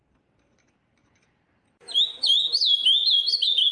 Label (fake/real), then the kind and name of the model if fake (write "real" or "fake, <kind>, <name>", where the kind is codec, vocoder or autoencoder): real